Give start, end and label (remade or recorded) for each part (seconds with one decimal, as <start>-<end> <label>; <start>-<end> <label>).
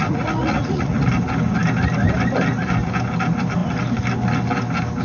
0.0-1.1 remade; 1.1-5.0 recorded